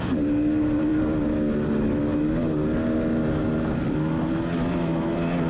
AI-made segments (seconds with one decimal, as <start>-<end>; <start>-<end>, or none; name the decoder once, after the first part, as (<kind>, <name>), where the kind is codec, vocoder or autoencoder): none